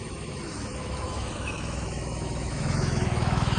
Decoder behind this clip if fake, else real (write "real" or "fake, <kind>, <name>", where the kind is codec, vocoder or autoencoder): fake, autoencoder, DAC-VAE